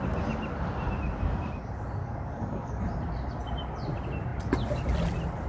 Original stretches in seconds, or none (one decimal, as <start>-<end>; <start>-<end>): 0.0-2.0; 2.8-5.5